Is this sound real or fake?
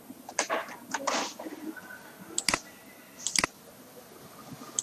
real